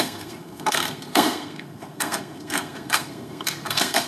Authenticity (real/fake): fake